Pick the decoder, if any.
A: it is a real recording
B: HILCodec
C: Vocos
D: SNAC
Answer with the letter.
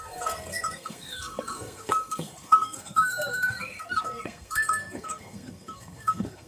D